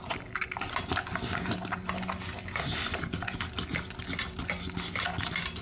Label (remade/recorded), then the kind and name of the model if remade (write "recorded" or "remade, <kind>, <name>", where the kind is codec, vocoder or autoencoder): recorded